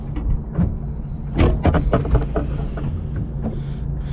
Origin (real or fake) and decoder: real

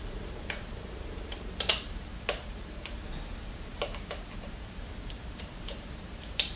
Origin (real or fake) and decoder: fake, vocoder, BigVGAN v2